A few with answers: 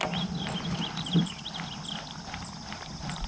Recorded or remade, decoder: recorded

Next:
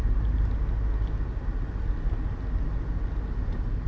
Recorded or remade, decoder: recorded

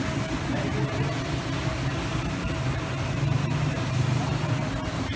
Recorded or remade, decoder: recorded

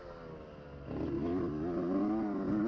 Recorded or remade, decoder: recorded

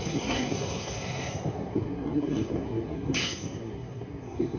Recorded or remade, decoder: remade, codec, SNAC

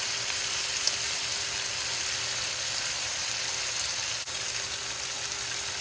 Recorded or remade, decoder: recorded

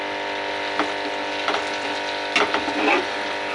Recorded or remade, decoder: recorded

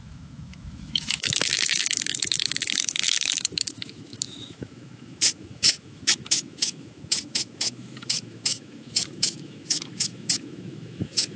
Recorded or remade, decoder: remade, autoencoder, DAC-VAE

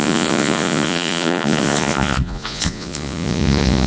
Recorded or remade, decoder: remade, vocoder, Vocos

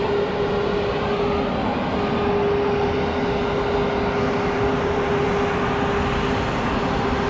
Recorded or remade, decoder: recorded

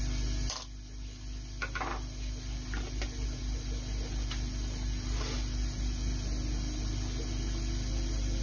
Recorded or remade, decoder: recorded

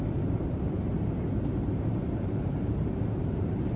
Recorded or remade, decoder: remade, vocoder, BigVGAN v2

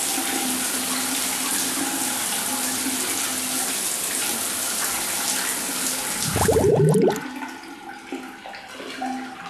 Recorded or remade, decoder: recorded